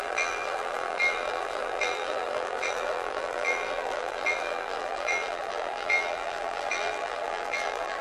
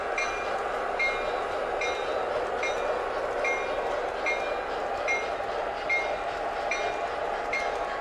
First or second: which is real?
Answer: second